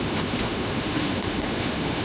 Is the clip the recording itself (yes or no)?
no